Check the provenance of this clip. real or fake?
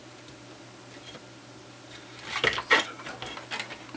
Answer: real